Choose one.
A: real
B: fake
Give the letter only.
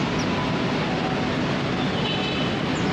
A